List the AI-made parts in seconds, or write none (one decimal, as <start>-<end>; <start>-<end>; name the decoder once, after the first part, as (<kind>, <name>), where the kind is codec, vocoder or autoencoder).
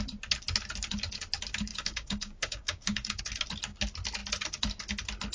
1.7-3.2 (codec, DAC)